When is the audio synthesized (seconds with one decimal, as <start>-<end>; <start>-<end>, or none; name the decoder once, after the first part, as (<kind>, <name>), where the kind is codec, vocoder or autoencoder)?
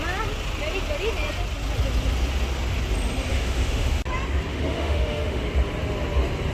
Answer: 3.3-4.0 (autoencoder, DAC-VAE); 4.5-5.4